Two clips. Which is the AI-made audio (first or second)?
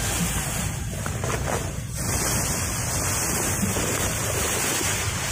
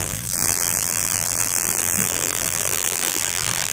second